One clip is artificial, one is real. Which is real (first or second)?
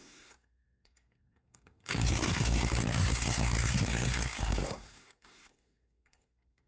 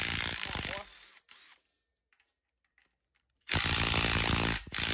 second